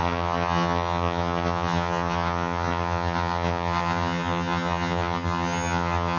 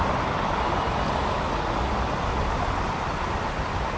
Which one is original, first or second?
second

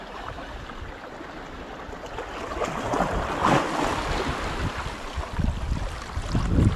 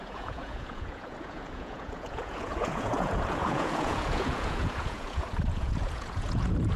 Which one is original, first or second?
first